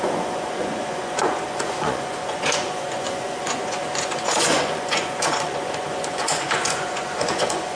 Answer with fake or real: fake